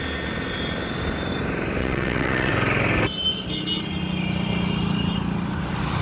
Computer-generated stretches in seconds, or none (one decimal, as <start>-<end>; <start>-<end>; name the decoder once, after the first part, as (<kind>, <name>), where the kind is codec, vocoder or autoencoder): 1.8-2.5 (vocoder, WaveNeXt)